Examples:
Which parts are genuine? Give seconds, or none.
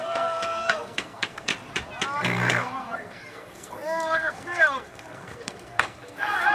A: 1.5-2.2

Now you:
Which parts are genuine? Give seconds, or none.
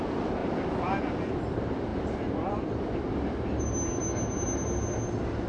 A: 0.0-5.5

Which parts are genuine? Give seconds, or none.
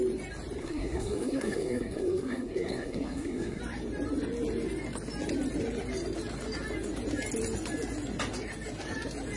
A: 0.0-0.6; 3.6-9.4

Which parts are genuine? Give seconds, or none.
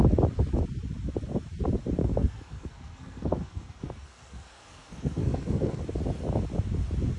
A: 0.0-2.0; 5.8-7.2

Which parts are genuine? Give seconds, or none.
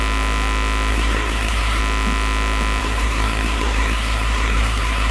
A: 0.0-0.9; 1.8-2.8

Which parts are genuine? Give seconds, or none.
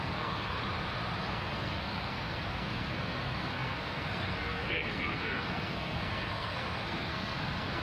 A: 0.6-1.2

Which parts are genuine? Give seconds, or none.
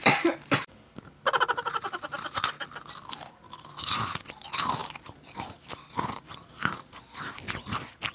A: 0.0-8.1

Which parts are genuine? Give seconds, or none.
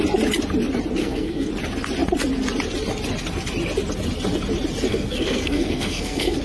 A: 0.0-1.0; 1.5-4.9